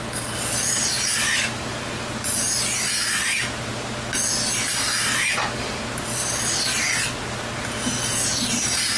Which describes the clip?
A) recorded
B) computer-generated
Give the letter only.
A